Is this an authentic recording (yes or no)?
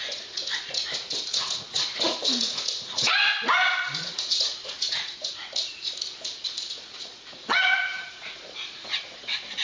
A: no